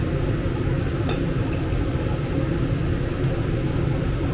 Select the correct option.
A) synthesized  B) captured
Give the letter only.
B